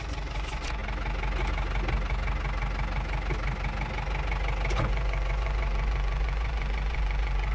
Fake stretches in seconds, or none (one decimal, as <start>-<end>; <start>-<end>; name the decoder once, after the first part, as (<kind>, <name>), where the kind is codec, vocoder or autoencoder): 0.0-0.8 (vocoder, Vocos); 4.7-7.5